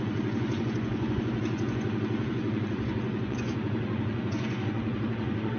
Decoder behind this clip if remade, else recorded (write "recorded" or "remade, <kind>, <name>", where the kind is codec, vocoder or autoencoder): remade, vocoder, Vocos